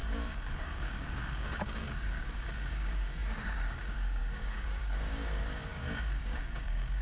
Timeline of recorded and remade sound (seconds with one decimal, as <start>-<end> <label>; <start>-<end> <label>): 0.0-7.0 remade

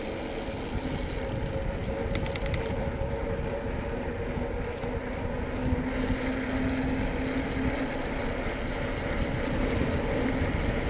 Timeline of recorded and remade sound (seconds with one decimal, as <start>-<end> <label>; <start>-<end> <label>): 0.0-10.9 recorded

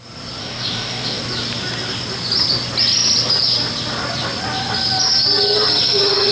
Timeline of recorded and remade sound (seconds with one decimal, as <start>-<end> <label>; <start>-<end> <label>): 0.0-0.4 recorded; 0.4-1.2 remade; 1.2-6.3 recorded

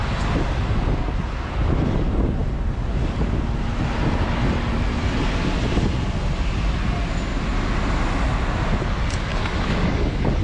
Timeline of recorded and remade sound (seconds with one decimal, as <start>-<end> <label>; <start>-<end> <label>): 0.0-9.3 recorded; 9.3-10.4 remade

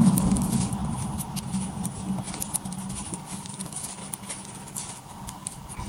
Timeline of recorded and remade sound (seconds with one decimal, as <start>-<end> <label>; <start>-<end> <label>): 0.0-0.8 remade; 0.8-3.1 recorded; 3.1-4.0 remade; 4.0-4.6 recorded; 4.6-5.9 remade

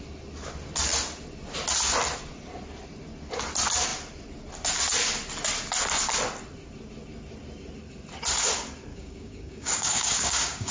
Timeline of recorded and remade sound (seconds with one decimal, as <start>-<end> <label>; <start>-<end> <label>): 0.0-8.9 recorded; 8.9-10.7 remade

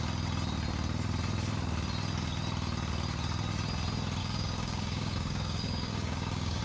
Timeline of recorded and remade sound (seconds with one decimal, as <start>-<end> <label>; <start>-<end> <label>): 0.0-4.2 recorded; 4.2-6.6 remade